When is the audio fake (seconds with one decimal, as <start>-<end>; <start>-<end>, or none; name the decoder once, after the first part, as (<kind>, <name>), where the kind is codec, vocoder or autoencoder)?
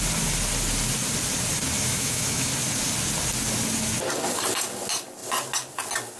1.9-2.5 (autoencoder, DAC-VAE)